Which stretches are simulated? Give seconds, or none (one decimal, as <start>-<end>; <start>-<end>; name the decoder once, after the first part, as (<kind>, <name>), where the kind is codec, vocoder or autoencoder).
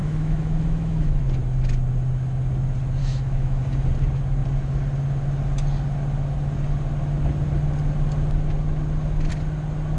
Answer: 0.0-1.2 (autoencoder, DAC-VAE); 3.0-3.6